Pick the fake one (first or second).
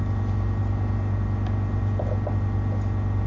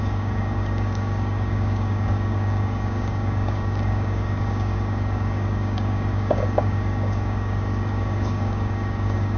second